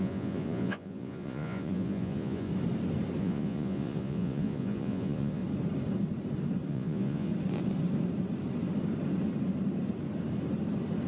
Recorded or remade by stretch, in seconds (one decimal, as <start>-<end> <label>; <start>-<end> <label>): 0.0-2.5 remade; 2.5-3.2 recorded; 3.2-5.4 remade; 5.4-6.7 recorded; 6.7-7.3 remade; 7.3-11.1 recorded